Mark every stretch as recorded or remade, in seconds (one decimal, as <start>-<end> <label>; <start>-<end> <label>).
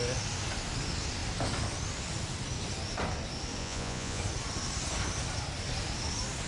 0.0-3.6 recorded; 3.6-4.2 remade; 4.2-6.5 recorded